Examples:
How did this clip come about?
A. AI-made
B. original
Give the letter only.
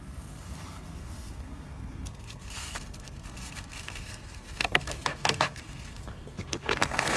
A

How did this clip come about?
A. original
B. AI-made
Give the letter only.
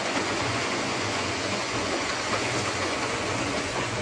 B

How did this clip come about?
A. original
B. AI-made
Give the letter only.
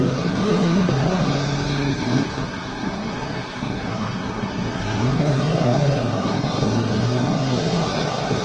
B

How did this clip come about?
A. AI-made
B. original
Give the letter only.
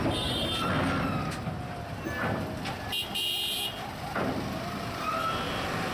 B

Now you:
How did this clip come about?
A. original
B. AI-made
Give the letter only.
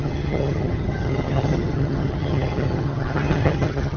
B